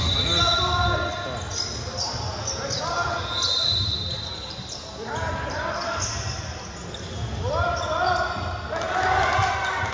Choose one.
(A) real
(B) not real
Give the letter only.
A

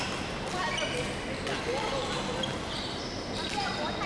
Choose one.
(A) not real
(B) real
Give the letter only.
B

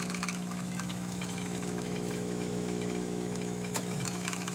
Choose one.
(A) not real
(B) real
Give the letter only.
A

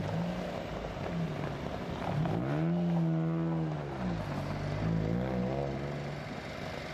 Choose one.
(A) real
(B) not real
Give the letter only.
A